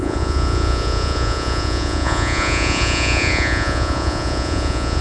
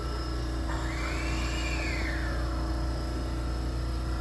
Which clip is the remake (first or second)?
first